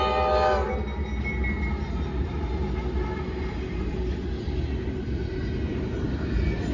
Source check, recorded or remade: recorded